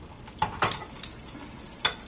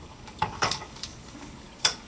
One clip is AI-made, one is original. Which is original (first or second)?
first